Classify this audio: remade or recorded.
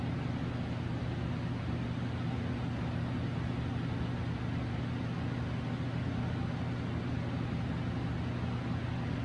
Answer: recorded